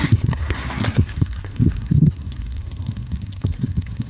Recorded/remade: remade